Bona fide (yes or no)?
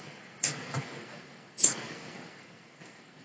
no